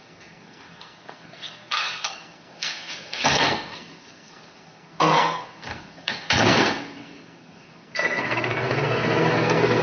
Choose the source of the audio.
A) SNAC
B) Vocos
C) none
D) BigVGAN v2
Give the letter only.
A